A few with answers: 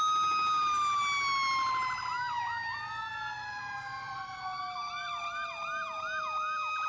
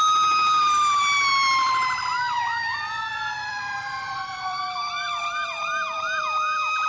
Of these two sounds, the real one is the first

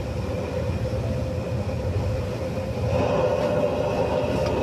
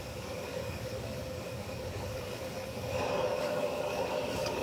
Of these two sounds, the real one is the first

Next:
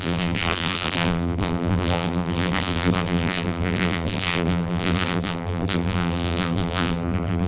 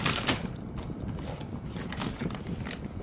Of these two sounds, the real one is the second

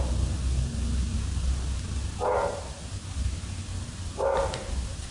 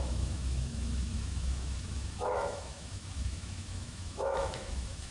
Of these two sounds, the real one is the first